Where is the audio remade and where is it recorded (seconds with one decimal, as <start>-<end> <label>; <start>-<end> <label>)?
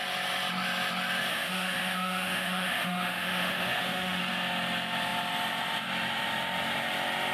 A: 0.0-1.3 recorded; 1.3-4.2 remade; 4.2-7.3 recorded